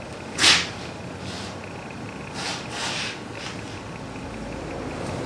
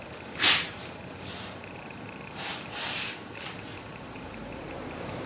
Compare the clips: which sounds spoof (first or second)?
second